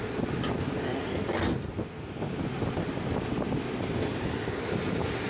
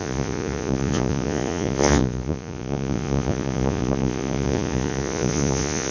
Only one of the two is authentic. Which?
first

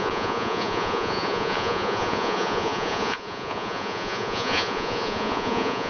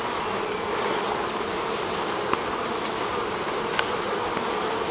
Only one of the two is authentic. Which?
second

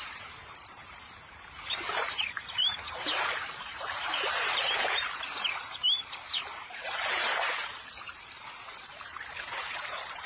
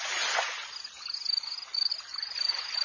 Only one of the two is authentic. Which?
second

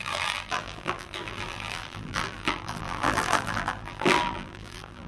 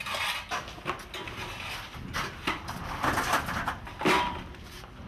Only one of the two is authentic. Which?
second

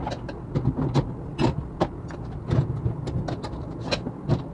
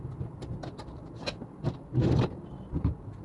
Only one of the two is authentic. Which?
first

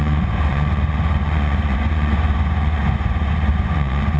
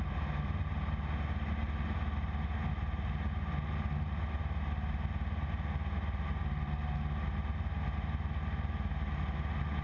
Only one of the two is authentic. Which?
second